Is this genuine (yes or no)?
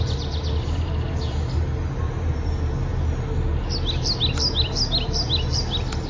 yes